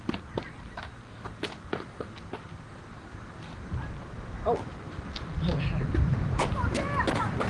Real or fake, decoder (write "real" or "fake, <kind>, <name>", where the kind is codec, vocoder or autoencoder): real